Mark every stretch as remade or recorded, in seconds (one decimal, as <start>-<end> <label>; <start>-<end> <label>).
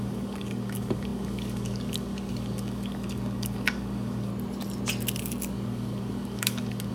0.0-4.3 remade; 4.3-5.5 recorded; 5.5-6.9 remade